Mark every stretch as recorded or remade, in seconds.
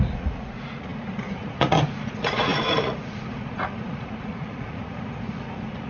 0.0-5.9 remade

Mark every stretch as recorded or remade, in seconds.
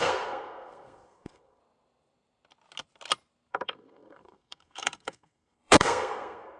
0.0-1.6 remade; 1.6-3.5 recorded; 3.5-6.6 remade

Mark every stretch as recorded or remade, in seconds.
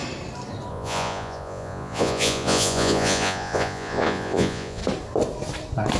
0.0-0.7 recorded; 0.7-4.8 remade; 4.8-6.0 recorded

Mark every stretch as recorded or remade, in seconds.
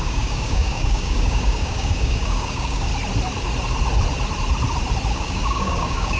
0.0-2.9 remade; 2.9-5.1 recorded; 5.1-6.2 remade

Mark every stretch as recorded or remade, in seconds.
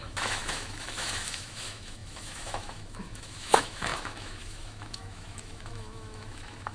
0.0-6.7 remade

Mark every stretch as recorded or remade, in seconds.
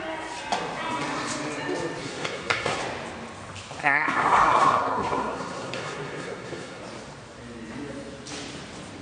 0.0-2.0 recorded; 2.0-2.8 remade; 2.8-3.8 recorded; 3.8-6.8 remade; 6.8-9.0 recorded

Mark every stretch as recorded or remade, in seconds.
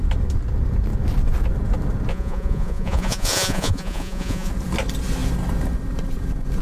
0.0-2.1 recorded; 2.1-4.5 remade; 4.5-6.6 recorded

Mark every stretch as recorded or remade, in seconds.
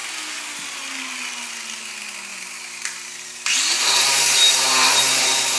0.0-2.3 recorded; 2.3-5.6 remade